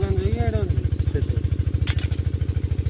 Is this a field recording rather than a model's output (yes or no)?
yes